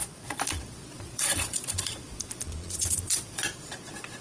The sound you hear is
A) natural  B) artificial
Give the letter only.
B